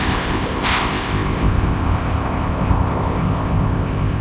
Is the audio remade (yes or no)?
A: yes